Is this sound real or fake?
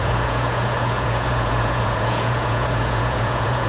fake